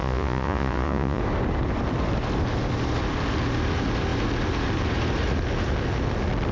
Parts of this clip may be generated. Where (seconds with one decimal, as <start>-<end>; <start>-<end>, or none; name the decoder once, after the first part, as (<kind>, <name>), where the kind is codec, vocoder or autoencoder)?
0.0-1.2 (vocoder, Vocos)